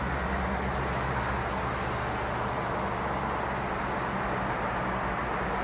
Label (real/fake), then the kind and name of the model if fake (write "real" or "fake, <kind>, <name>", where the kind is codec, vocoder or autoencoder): real